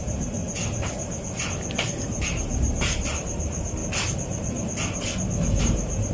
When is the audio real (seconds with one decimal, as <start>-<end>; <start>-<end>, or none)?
0.4-1.8; 3.8-5.6